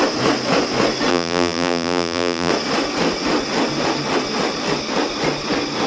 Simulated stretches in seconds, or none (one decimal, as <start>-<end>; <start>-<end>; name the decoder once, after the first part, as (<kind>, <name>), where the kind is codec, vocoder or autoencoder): 1.1-2.5 (vocoder, BigVGAN v2)